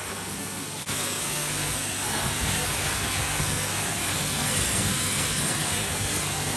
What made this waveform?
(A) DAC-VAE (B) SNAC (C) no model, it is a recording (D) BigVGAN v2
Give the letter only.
B